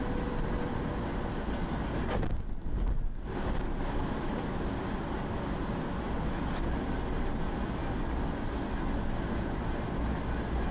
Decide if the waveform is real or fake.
real